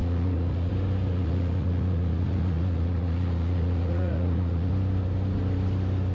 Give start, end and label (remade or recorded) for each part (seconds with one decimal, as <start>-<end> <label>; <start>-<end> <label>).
0.0-0.7 remade; 0.7-1.1 recorded; 1.1-4.7 remade; 4.7-6.1 recorded